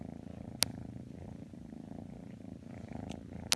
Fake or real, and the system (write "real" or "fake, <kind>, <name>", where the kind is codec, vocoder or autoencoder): real